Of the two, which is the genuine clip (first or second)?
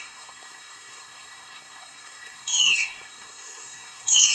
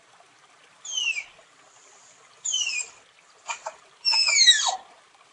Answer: second